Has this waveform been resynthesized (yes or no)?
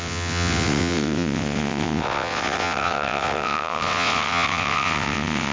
yes